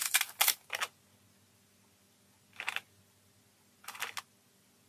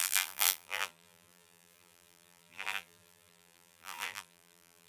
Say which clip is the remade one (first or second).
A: second